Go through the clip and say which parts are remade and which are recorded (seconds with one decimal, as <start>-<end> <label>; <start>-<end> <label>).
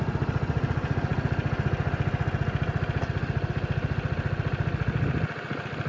0.0-5.9 recorded